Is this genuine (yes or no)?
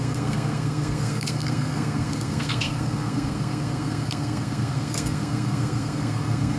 no